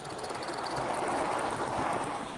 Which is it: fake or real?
real